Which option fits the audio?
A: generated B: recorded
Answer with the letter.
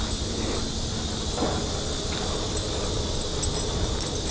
B